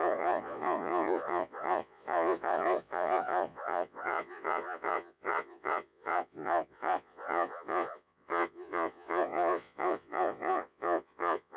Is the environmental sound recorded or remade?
remade